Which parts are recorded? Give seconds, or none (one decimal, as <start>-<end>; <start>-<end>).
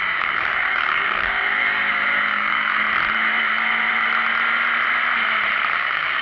2.8-5.7